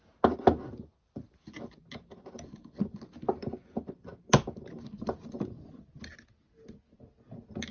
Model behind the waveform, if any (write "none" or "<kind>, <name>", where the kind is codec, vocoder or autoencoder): none